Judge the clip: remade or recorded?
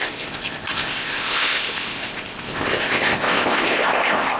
remade